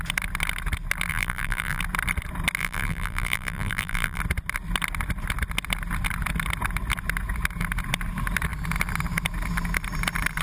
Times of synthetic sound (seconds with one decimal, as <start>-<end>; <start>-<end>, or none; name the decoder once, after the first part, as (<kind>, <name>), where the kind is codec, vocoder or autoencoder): 1.1-1.8 (vocoder, BigVGAN v2); 2.6-4.2

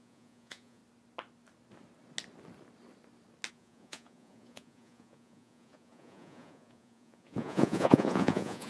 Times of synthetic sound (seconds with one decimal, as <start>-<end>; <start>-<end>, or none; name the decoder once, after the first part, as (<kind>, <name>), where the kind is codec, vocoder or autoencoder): 0.0-0.8 (vocoder, Vocos); 3.5-8.7

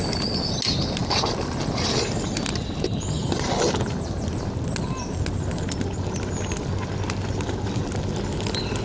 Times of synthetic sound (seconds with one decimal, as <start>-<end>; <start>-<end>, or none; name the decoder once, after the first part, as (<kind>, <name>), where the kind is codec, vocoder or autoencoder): none

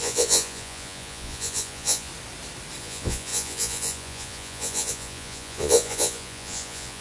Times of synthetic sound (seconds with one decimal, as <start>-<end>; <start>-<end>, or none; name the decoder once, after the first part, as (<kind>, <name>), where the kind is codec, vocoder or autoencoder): 0.0-2.1 (vocoder, Vocos); 2.8-7.0

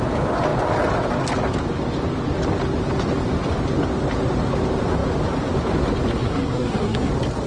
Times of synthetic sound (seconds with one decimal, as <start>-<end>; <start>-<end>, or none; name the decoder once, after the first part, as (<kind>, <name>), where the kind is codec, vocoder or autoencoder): 6.2-7.1 (codec, SNAC)

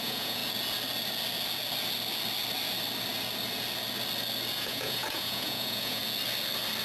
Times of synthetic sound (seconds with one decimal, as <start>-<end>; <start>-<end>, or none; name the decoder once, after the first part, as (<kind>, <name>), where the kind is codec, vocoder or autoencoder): 0.0-0.4 (vocoder, Vocos); 4.5-6.0